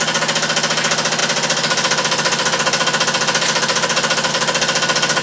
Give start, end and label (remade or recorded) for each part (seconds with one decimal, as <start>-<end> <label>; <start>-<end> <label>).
0.0-5.2 recorded